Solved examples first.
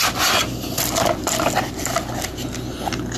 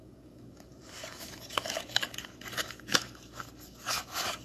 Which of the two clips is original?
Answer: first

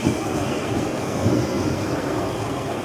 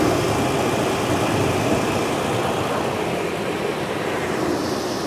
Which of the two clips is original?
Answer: second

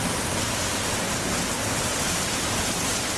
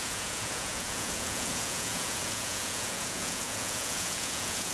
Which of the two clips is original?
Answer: first